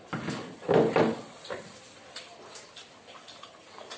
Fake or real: real